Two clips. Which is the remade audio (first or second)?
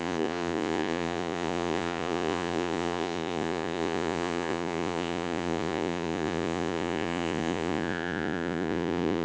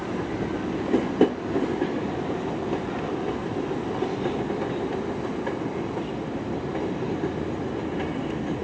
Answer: first